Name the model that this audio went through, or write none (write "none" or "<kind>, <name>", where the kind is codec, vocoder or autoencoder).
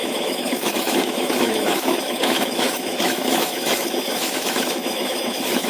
autoencoder, DAC-VAE